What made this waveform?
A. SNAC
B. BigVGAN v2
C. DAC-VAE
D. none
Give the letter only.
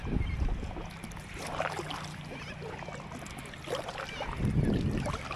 D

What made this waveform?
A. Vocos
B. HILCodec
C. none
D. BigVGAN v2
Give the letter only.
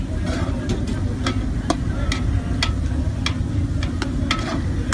C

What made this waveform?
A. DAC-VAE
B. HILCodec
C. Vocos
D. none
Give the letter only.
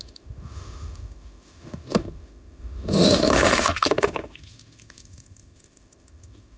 A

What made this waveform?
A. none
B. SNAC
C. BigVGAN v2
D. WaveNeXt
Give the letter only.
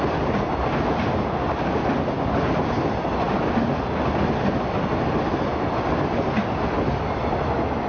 A